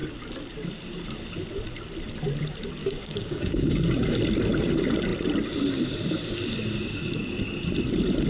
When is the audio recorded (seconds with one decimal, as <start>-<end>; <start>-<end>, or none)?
0.0-2.8; 3.8-8.3

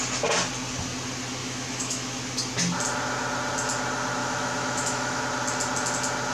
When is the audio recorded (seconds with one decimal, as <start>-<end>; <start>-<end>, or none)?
0.0-1.4; 2.2-4.2; 5.2-6.3